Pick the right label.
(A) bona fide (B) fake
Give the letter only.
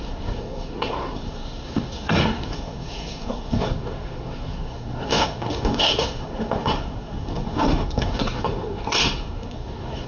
B